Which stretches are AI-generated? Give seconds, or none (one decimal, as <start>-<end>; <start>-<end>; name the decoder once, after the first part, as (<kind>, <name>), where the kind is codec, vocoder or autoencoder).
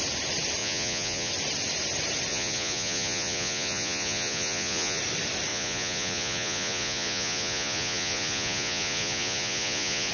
0.6-1.3 (vocoder, Vocos); 2.3-5.0; 5.5-10.1